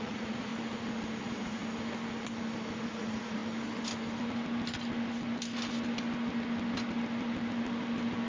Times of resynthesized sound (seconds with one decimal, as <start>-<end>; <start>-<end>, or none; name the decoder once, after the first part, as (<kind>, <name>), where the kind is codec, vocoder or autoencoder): 0.0-0.5 (vocoder, Vocos); 1.2-1.6; 3.0-3.4